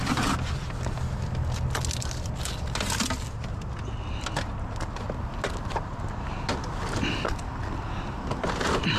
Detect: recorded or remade recorded